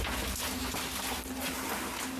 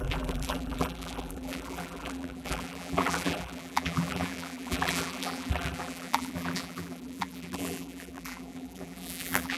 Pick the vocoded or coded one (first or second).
second